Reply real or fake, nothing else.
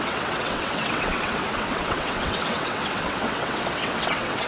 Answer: fake